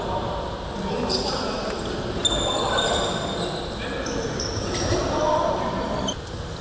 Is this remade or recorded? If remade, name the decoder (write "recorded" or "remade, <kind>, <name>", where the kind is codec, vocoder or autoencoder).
recorded